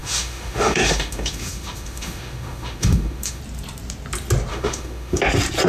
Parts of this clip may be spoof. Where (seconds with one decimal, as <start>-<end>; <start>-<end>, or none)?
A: 0.0-3.4; 4.5-5.2